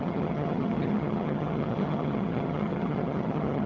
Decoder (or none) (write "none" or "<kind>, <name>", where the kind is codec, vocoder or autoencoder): vocoder, HiFi-GAN